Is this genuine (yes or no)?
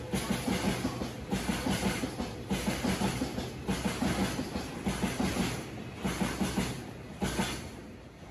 yes